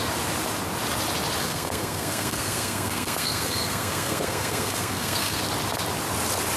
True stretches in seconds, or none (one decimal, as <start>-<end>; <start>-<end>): 0.0-1.4; 5.4-6.6